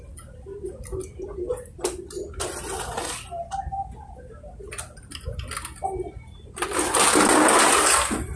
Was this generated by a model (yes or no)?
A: no